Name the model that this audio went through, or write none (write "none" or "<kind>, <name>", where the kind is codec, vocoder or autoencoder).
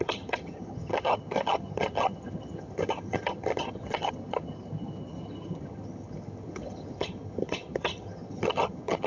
vocoder, HiFi-GAN